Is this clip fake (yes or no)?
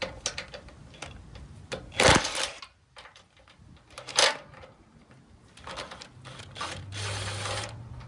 no